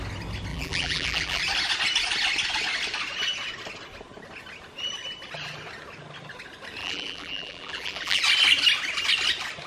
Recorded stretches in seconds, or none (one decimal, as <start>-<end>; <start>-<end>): 0.0-0.5; 1.4-6.8; 8.2-9.7